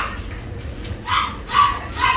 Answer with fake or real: fake